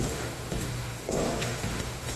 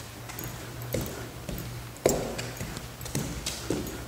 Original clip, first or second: second